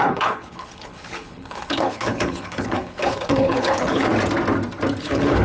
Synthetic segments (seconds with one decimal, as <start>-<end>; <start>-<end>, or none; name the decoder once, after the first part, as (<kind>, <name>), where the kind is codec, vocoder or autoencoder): 0.0-4.1 (codec, HILCodec); 5.0-5.4